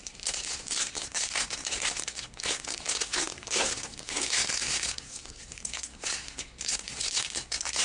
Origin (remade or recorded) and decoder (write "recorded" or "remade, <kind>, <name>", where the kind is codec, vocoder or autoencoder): remade, codec, SNAC